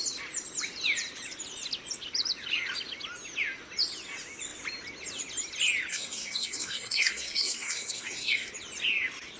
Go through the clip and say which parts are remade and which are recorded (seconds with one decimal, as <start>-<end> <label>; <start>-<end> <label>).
0.0-5.9 recorded; 5.9-8.5 remade; 8.5-9.4 recorded